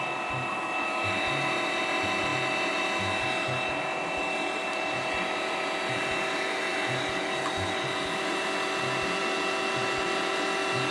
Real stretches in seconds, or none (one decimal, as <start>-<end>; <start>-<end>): 0.0-10.9